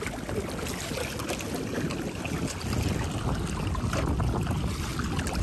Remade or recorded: recorded